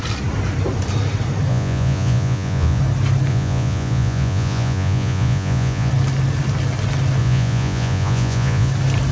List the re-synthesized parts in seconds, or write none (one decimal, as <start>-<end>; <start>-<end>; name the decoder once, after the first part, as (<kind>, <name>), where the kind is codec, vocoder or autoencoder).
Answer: 1.5-2.8 (vocoder, Vocos); 3.3-5.9; 7.2-8.7